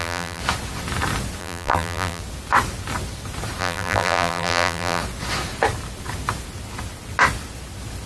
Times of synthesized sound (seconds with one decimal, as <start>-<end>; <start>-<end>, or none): 0.0-0.4; 1.4-2.2; 3.6-5.0